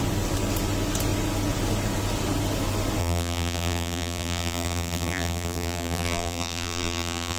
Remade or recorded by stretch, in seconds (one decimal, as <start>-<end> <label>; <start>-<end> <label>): 0.0-3.0 recorded; 3.0-7.4 remade